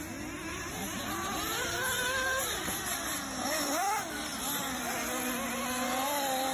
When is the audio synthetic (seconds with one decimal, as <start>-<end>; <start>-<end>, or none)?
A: none

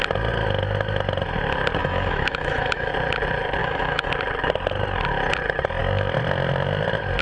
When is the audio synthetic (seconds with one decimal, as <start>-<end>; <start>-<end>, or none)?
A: 1.8-2.9; 3.6-4.1